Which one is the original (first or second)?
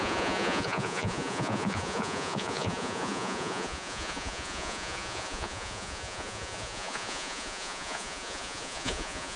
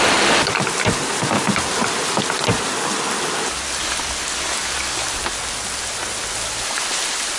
second